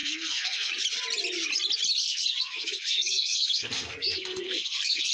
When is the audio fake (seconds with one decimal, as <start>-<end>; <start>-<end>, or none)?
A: 0.0-0.7; 2.0-5.1